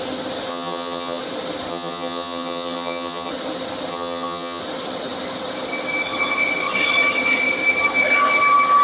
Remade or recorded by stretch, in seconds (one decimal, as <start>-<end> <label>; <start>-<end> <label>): 0.0-0.5 recorded; 0.5-1.2 remade; 1.2-1.7 recorded; 1.7-3.3 remade; 3.3-3.9 recorded; 3.9-4.6 remade; 4.6-8.8 recorded